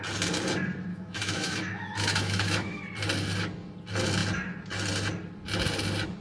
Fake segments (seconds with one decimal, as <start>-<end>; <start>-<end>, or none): 0.9-2.8